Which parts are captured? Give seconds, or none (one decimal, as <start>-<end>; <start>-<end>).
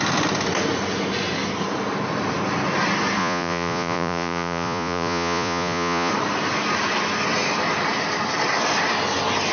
0.0-3.2; 6.1-9.5